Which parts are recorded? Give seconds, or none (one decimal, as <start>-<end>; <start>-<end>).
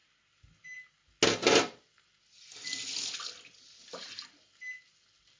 0.0-5.4